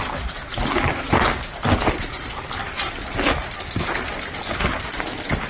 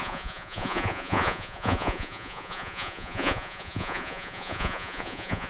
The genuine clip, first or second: first